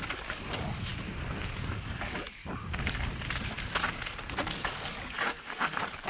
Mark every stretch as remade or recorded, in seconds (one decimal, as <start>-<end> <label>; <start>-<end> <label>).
0.0-0.9 remade; 0.9-1.5 recorded; 1.5-2.4 remade; 2.4-4.3 recorded; 4.3-6.1 remade